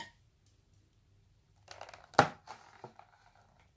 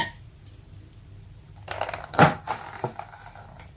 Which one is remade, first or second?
second